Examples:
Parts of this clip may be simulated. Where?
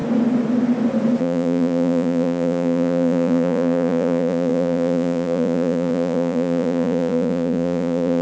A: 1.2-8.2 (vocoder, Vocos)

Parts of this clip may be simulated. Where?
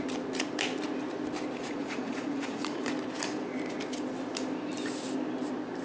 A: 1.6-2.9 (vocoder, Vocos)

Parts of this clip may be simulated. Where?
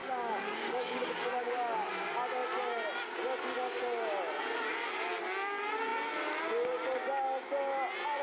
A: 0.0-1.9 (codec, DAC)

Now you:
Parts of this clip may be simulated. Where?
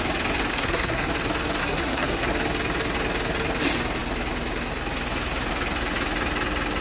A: 0.5-1.1 (codec, SNAC); 1.6-2.3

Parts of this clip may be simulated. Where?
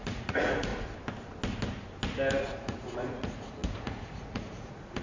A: 0.0-0.7 (vocoder, Vocos); 2.4-5.0